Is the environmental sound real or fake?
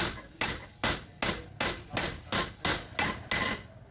real